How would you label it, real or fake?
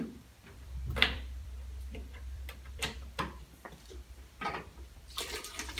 fake